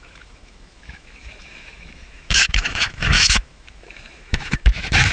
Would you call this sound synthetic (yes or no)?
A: yes